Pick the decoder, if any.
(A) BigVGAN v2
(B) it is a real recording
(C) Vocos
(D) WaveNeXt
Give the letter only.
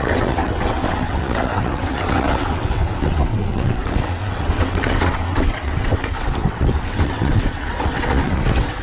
D